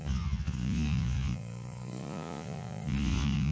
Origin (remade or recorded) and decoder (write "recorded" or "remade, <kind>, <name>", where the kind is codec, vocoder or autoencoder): remade, vocoder, Vocos